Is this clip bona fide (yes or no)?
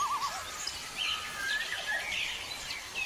yes